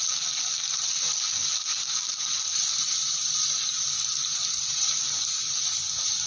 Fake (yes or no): no